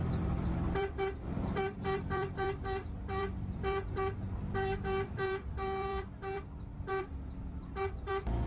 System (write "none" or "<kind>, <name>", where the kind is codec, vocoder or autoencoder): vocoder, BigVGAN v2